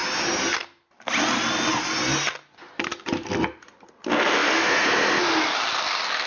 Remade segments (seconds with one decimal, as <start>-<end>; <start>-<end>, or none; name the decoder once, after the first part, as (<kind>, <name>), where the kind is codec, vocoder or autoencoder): none